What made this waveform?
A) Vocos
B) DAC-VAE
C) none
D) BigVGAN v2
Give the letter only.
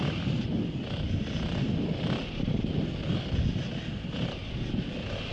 C